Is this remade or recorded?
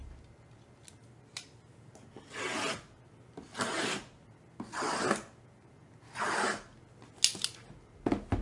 recorded